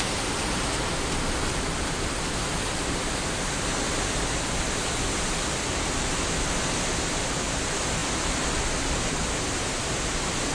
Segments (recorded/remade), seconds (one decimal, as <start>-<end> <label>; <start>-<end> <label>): 0.0-10.5 recorded